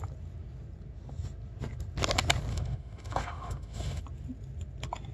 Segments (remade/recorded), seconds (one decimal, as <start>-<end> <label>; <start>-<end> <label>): 0.0-2.5 recorded; 2.5-4.0 remade; 4.0-5.1 recorded